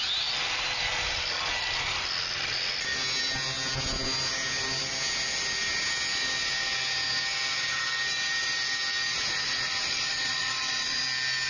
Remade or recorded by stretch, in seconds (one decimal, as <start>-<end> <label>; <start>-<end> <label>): 0.0-9.8 recorded; 9.8-11.0 remade; 11.0-11.5 recorded